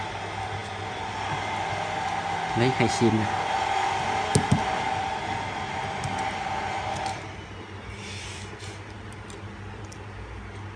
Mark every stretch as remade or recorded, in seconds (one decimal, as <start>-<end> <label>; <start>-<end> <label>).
0.0-10.8 recorded